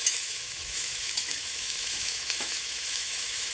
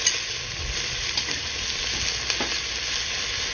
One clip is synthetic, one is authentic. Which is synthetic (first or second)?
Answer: first